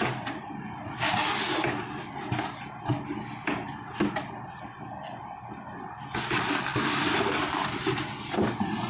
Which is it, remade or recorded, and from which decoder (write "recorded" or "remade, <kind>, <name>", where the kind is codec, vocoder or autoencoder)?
recorded